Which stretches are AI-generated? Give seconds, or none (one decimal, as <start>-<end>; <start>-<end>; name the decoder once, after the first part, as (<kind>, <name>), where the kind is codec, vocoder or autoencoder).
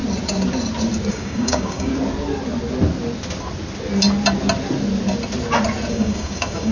1.1-1.9 (codec, DAC); 5.9-6.7